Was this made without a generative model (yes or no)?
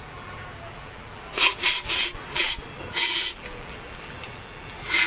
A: no